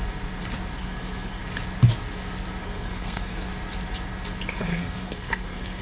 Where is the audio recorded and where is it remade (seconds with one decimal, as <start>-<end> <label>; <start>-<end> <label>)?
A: 0.0-0.8 recorded; 0.8-1.4 remade; 1.4-2.6 recorded; 2.6-3.5 remade; 3.5-4.7 recorded; 4.7-5.8 remade